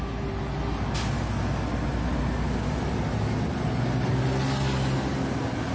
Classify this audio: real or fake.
real